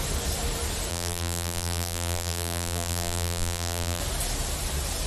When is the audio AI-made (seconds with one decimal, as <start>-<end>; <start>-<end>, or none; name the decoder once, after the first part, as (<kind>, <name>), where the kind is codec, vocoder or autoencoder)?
0.9-4.0 (vocoder, BigVGAN v2)